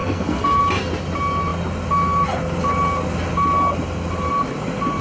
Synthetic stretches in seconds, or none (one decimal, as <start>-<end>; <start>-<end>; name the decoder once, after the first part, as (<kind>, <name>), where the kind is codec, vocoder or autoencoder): 0.0-0.6 (codec, SNAC)

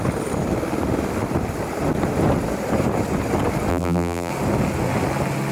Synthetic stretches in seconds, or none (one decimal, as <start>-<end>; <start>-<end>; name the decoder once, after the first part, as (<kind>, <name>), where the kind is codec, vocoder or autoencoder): 3.7-4.3 (vocoder, BigVGAN v2)

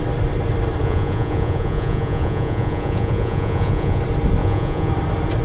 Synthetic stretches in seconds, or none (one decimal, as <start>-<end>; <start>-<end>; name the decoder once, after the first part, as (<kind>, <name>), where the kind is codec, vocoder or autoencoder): 0.8-4.0 (vocoder, Vocos); 4.4-4.9

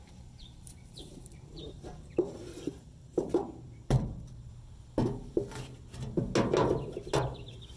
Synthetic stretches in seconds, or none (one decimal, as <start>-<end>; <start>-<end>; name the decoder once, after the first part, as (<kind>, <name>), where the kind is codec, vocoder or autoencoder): 0.0-4.7 (vocoder, BigVGAN v2)

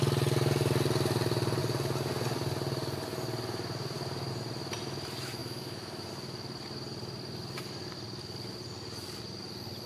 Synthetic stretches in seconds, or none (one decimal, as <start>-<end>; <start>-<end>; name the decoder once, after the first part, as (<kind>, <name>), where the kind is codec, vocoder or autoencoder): 5.4-6.1 (autoencoder, DAC-VAE)

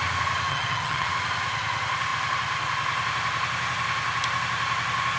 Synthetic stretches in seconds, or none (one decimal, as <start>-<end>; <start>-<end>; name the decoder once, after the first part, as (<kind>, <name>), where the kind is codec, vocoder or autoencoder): 0.5-1.1 (vocoder, HiFi-GAN)

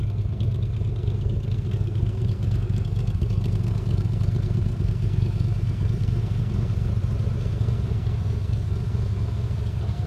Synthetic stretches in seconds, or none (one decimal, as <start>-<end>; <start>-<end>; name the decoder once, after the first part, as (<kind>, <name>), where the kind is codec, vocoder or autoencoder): 0.0-6.9 (codec, SNAC); 7.4-10.1